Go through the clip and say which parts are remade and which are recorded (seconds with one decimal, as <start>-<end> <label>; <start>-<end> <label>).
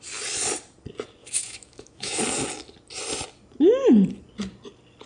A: 0.0-1.2 recorded; 1.2-2.2 remade; 2.2-5.1 recorded